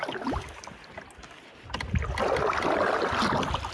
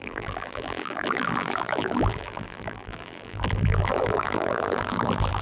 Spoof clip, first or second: second